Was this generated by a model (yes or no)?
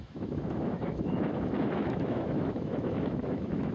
yes